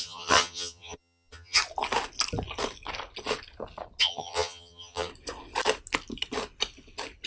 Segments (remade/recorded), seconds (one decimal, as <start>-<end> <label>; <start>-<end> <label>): 0.0-1.6 remade; 1.6-4.0 recorded; 4.0-5.1 remade; 5.1-7.3 recorded